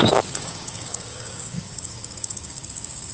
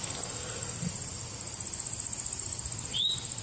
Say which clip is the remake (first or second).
first